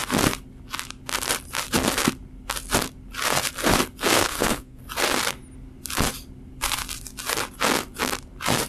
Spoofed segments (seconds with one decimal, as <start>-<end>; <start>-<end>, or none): 4.0-4.8